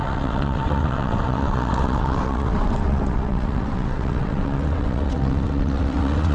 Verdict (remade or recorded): remade